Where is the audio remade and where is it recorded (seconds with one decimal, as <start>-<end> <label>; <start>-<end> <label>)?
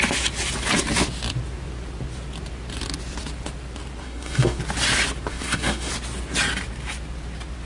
0.0-4.0 recorded; 4.0-4.6 remade; 4.6-5.3 recorded; 5.3-5.9 remade; 5.9-7.7 recorded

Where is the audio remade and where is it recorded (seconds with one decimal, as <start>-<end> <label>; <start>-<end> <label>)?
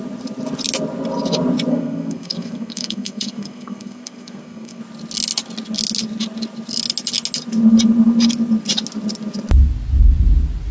0.0-1.7 recorded; 1.7-4.8 remade; 4.8-10.7 recorded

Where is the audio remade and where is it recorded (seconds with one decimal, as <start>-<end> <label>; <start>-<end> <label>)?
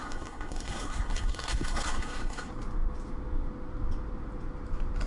0.0-2.5 remade; 2.5-5.1 recorded